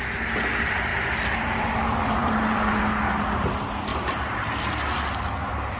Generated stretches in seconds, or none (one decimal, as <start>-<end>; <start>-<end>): 0.9-2.8; 3.9-4.5